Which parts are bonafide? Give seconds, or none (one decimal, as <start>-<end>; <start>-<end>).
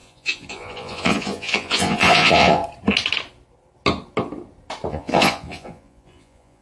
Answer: 2.6-4.9